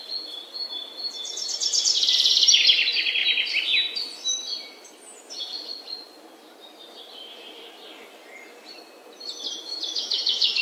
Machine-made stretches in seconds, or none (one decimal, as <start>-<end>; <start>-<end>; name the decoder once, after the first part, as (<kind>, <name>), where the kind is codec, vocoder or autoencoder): 9.7-10.6 (autoencoder, DAC-VAE)